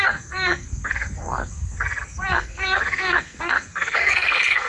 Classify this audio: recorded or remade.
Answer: remade